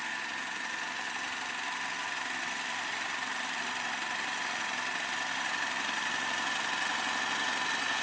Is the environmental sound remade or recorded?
recorded